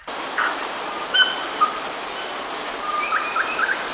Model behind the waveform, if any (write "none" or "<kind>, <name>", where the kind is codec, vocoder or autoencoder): none